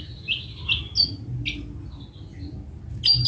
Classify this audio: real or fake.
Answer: real